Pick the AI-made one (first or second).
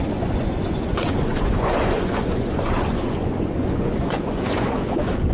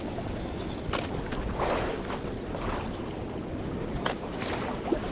first